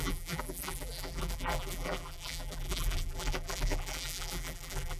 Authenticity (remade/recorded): remade